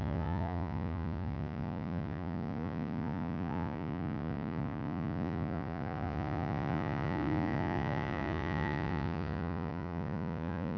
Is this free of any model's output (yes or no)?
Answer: no